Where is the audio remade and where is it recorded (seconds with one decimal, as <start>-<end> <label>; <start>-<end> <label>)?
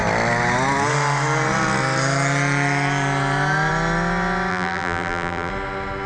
0.0-4.5 recorded; 4.5-5.5 remade; 5.5-6.1 recorded